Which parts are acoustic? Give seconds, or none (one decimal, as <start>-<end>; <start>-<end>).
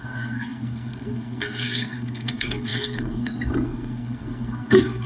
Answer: none